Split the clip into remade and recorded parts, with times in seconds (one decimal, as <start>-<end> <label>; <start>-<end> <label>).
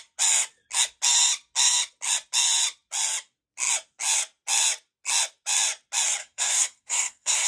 0.0-6.2 recorded; 6.2-7.5 remade